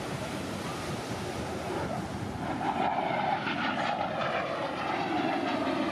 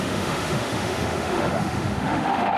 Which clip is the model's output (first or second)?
second